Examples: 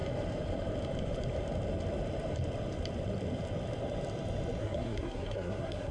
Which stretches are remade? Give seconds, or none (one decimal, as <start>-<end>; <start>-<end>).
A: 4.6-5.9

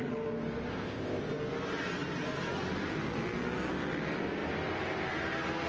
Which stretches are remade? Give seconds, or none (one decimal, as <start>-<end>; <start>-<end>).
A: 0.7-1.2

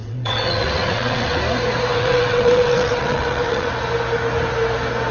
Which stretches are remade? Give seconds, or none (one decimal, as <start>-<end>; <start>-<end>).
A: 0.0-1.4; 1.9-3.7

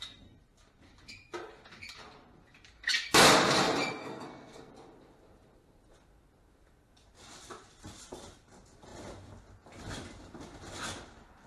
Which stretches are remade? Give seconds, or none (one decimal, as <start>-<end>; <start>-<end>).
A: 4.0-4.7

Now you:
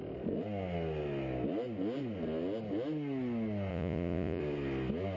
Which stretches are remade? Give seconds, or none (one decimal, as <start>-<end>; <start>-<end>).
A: 3.7-4.4